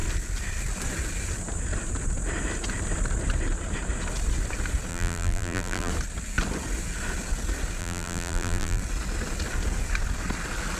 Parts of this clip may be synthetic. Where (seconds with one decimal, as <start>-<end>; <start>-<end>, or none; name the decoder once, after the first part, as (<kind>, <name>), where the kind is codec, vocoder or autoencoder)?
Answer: 4.9-5.9 (vocoder, BigVGAN v2); 7.8-8.8

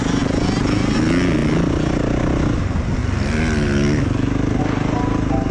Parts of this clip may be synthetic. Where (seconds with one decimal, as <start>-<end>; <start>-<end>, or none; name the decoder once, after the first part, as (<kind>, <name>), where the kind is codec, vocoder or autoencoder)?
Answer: none

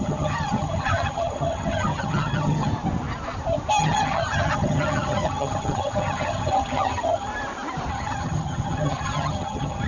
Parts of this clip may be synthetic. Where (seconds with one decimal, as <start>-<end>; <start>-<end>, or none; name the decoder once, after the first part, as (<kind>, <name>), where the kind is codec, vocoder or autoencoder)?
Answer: 0.0-2.7 (vocoder, HiFi-GAN); 3.8-7.3; 7.9-9.9

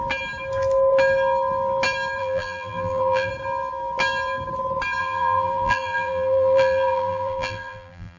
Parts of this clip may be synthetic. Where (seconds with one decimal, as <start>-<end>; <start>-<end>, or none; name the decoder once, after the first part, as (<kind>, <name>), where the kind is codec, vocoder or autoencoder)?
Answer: 2.2-3.3 (vocoder, BigVGAN v2); 5.0-8.2

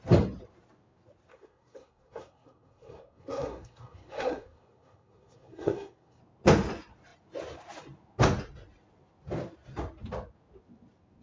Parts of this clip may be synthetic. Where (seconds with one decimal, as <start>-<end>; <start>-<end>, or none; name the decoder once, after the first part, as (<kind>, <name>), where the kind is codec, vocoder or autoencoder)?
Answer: 1.3-6.2 (codec, SNAC)

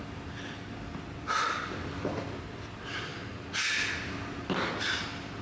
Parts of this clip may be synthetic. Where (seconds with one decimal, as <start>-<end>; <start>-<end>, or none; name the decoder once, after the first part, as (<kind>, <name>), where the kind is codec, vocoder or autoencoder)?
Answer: none

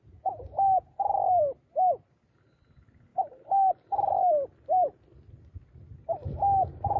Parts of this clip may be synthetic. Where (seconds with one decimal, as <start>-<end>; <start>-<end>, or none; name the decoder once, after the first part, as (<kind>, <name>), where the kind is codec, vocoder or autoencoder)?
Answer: none

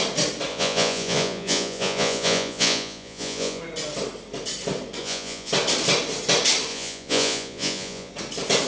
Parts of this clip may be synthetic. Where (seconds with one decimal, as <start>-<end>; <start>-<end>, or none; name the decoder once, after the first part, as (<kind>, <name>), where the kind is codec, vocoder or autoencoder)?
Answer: 0.5-3.6 (vocoder, Vocos); 5.0-5.5; 6.7-8.1